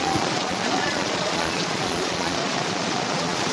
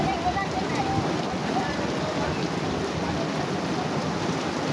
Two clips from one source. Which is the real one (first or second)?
second